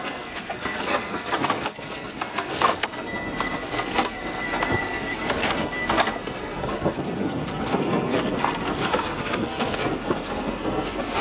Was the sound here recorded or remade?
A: remade